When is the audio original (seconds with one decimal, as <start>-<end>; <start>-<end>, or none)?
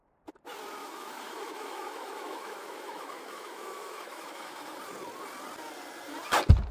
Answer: 0.0-0.8; 4.8-6.7